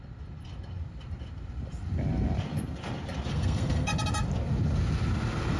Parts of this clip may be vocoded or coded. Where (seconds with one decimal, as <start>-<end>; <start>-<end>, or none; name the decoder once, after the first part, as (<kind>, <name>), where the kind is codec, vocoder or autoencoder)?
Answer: 3.3-3.9 (codec, SNAC)